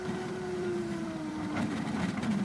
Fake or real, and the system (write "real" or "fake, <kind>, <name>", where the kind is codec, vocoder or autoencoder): fake, vocoder, BigVGAN v2